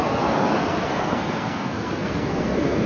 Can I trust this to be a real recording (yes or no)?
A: no